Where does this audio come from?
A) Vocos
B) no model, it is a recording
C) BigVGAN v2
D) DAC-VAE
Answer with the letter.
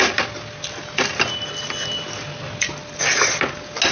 B